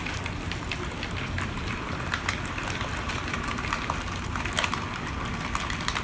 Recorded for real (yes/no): yes